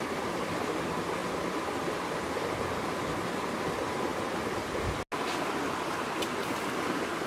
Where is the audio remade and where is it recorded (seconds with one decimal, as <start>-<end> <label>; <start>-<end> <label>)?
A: 0.0-7.3 recorded